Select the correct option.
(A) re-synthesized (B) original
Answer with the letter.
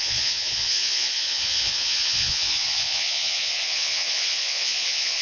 A